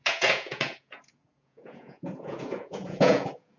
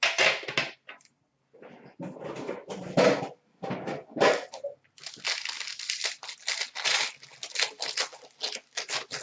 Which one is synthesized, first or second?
first